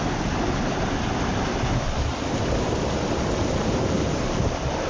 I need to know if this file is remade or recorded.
recorded